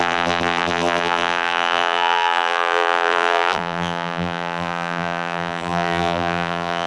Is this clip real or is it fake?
fake